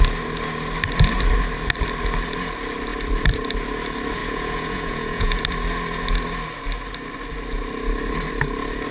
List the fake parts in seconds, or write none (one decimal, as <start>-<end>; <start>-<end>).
4.2-5.4